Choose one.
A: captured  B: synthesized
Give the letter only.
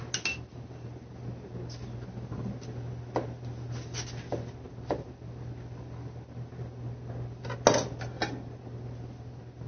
A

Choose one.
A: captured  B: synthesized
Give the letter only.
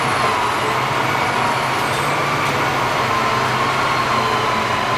A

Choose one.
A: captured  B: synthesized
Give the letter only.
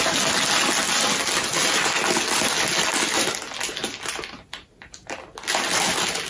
A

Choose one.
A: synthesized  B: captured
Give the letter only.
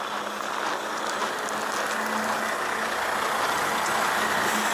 B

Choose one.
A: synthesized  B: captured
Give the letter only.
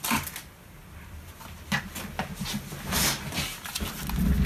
B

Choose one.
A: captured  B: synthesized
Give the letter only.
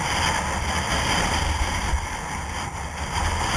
A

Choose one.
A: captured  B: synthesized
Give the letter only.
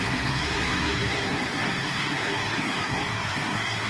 B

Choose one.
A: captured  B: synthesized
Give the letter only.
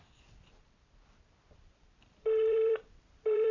B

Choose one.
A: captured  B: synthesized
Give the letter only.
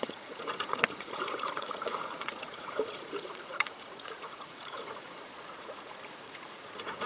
B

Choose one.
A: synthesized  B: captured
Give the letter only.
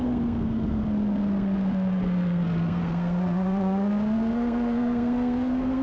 A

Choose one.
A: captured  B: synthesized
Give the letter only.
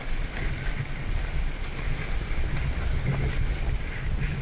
A